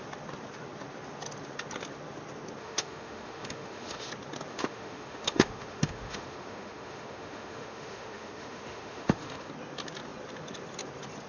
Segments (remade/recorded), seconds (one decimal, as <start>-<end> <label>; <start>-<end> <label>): 0.0-2.6 recorded; 2.6-4.1 remade; 4.1-4.5 recorded; 4.5-9.5 remade; 9.5-11.3 recorded